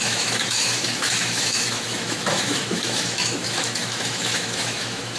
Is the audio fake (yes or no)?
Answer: yes